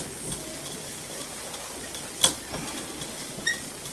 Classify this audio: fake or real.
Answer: real